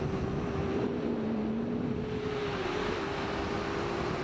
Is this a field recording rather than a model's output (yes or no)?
yes